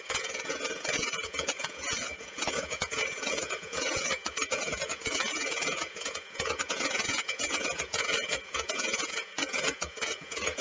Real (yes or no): no